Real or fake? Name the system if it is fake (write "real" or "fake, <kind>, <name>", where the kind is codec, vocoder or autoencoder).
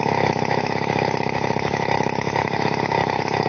fake, autoencoder, DAC-VAE